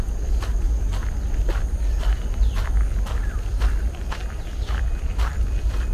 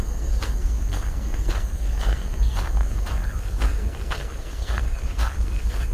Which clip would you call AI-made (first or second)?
second